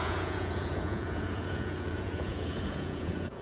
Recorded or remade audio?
remade